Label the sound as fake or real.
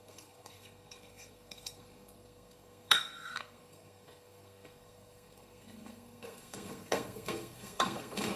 fake